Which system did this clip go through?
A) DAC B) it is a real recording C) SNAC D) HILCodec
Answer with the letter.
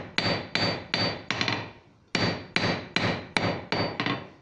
B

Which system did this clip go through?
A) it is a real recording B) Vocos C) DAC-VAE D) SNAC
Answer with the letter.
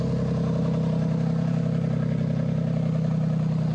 A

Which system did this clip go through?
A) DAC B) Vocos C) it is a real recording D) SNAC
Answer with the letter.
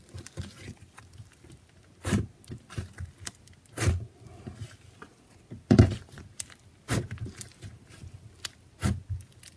C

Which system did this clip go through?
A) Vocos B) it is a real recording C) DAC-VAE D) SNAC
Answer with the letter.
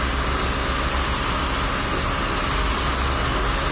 B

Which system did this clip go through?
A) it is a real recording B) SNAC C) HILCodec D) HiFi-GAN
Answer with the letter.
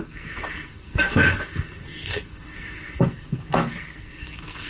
B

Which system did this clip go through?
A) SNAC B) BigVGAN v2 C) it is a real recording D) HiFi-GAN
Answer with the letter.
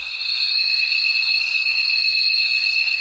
A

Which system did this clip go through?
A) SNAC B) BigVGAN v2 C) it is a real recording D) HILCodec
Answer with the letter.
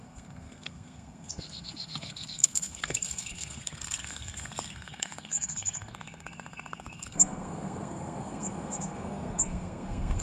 A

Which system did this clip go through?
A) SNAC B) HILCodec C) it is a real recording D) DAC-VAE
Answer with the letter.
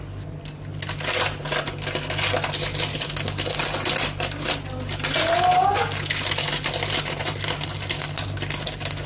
C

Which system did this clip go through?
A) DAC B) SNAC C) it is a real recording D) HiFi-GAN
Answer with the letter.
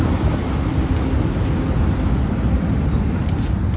C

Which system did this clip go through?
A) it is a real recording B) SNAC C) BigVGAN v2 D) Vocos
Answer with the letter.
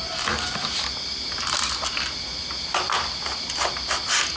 A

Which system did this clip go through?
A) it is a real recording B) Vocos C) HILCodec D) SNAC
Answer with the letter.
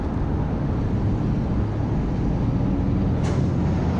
A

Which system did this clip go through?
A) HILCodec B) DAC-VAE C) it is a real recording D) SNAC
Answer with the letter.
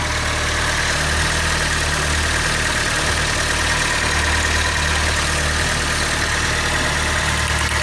C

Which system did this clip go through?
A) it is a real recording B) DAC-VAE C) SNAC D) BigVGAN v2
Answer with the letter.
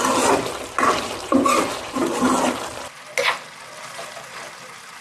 A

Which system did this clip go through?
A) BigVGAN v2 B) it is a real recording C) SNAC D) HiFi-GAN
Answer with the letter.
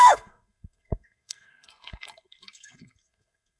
C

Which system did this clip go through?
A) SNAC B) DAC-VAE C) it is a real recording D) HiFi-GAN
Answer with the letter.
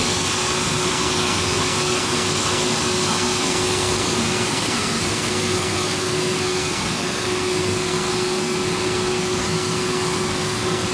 A